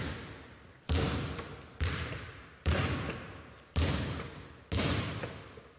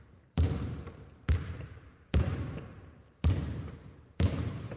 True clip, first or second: first